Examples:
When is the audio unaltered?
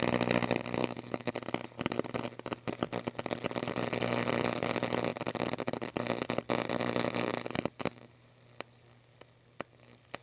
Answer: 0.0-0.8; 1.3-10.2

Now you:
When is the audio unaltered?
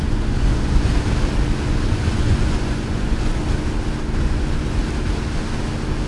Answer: 0.9-1.7; 3.4-4.2; 4.8-6.1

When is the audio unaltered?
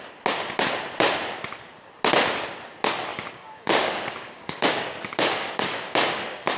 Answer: 0.0-3.1